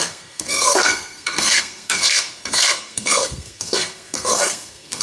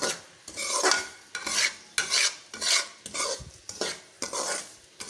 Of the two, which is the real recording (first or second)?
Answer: second